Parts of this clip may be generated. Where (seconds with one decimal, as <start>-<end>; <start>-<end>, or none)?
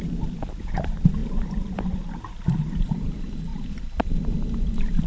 none